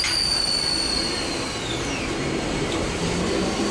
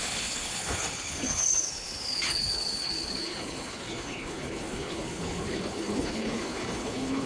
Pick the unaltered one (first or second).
first